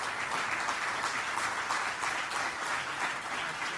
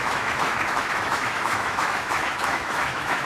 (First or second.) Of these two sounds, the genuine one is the first